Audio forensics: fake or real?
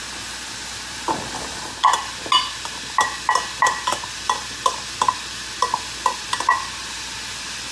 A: real